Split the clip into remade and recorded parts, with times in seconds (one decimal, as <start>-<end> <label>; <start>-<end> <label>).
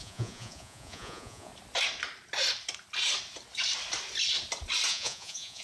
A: 0.0-1.5 remade; 1.5-4.9 recorded; 4.9-5.6 remade